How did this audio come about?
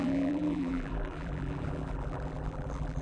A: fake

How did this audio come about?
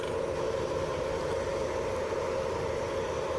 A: real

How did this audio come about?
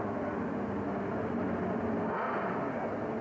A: real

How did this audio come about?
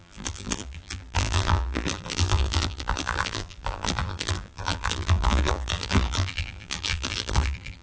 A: fake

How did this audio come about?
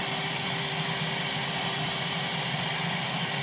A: fake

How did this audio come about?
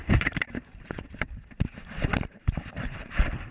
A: fake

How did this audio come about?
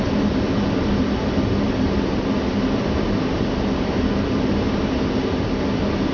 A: real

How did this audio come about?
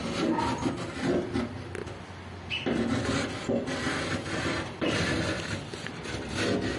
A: real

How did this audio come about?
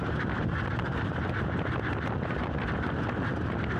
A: real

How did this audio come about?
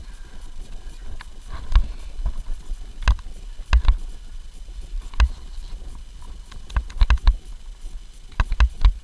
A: real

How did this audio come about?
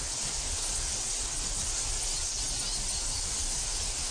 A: real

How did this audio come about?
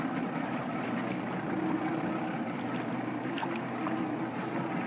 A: real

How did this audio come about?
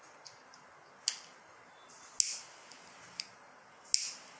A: real